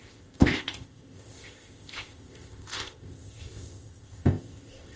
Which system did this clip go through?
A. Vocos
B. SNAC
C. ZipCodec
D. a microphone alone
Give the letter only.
C